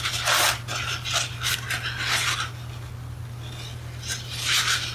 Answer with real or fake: real